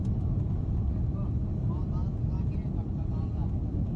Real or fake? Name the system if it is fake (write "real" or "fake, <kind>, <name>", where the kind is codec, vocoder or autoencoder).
real